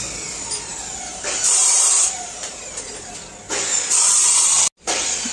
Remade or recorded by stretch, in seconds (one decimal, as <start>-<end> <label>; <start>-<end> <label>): 0.0-0.7 recorded; 0.7-3.1 remade; 3.1-5.3 recorded